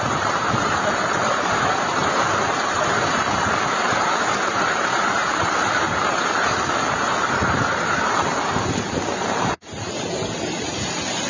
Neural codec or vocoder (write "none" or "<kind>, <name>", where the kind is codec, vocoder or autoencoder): vocoder, BigVGAN v2